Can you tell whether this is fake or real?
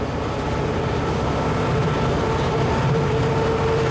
fake